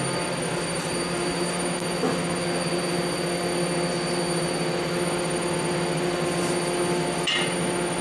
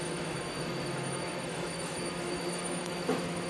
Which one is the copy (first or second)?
second